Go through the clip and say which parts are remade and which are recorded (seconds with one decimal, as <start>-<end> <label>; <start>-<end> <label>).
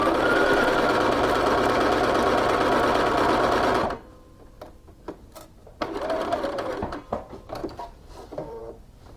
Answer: 0.0-7.6 recorded; 7.6-8.6 remade; 8.6-9.2 recorded